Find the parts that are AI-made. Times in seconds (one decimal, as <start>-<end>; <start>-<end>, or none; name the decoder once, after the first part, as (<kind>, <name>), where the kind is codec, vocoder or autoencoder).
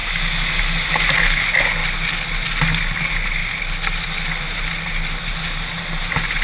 none